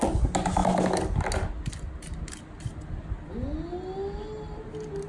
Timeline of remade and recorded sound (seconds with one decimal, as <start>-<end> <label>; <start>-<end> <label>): 0.0-5.1 recorded